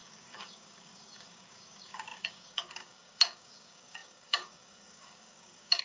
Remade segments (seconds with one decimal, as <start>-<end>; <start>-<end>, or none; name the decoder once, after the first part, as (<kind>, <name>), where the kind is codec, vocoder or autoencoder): 0.0-5.8 (codec, DAC)